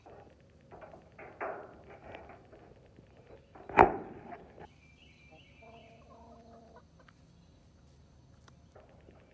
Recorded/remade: recorded